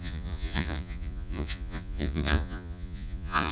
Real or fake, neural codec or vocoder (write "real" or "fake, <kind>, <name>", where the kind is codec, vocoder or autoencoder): fake, vocoder, Vocos